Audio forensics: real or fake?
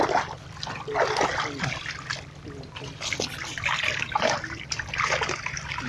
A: real